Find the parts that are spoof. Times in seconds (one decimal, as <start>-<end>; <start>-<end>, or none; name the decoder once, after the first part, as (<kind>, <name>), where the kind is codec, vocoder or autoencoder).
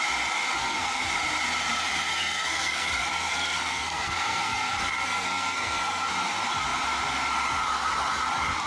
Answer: 0.6-1.1 (codec, SNAC); 2.1-6.1